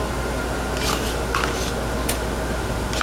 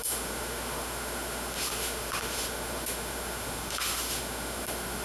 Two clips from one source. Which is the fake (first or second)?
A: second